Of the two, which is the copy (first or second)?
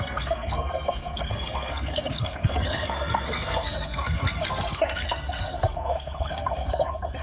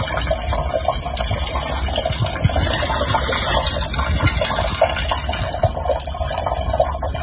first